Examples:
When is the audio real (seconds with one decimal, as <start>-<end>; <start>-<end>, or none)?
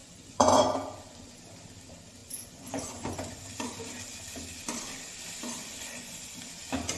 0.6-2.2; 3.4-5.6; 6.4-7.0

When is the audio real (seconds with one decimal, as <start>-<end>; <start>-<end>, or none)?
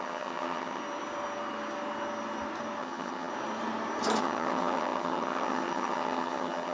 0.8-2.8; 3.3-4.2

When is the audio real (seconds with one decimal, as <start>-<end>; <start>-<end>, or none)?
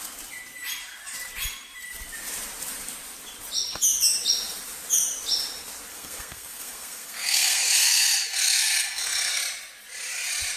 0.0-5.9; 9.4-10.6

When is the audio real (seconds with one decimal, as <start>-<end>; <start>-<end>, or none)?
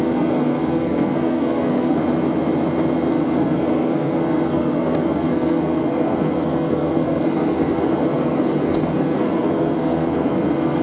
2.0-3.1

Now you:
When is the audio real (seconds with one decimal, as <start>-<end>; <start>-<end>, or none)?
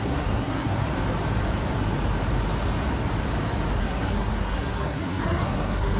0.9-3.8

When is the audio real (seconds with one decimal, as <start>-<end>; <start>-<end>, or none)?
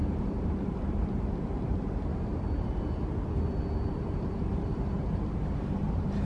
2.1-3.9